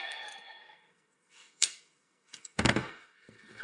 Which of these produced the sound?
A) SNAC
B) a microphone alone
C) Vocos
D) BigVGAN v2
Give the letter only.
A